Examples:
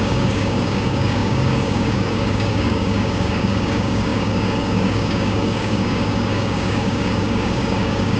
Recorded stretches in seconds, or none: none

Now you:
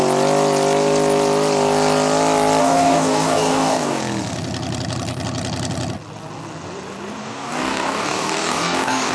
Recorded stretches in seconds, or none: 0.0-2.6; 4.0-7.2

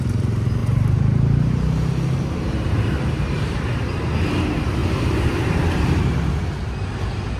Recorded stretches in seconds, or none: 0.0-0.6; 3.8-4.8; 6.0-7.4

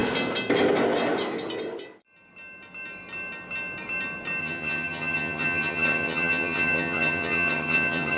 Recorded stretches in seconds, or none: 0.0-4.4